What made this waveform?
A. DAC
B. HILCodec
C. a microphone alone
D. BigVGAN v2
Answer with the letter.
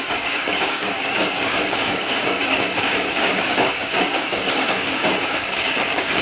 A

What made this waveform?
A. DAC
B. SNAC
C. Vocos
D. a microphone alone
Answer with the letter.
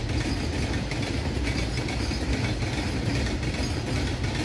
D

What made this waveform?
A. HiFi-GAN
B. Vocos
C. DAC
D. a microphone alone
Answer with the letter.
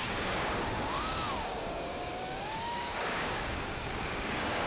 C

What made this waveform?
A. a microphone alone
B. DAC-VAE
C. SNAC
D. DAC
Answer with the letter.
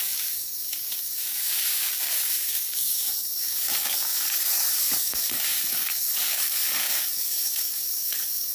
D